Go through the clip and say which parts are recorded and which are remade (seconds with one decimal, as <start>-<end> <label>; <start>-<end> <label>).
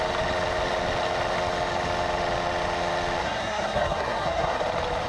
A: 0.0-3.2 recorded; 3.2-4.6 remade; 4.6-5.1 recorded